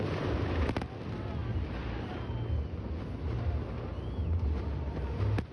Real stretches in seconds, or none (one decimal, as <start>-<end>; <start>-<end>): 0.0-5.5